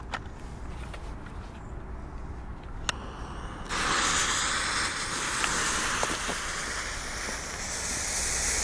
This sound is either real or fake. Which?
real